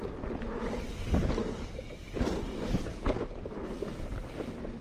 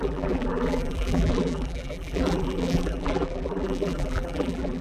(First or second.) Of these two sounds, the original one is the first